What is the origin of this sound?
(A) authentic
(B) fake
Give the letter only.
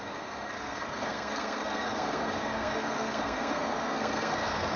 B